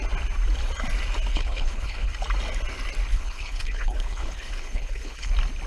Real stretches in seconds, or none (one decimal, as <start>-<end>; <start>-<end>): 0.0-1.3; 2.1-3.1; 5.3-5.7